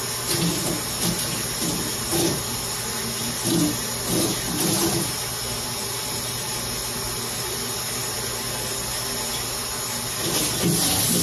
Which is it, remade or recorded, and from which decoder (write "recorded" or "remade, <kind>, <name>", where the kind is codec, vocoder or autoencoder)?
recorded